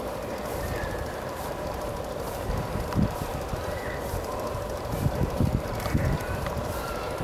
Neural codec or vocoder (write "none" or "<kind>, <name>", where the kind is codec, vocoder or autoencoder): vocoder, BigVGAN v2